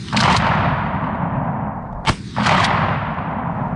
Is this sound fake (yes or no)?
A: no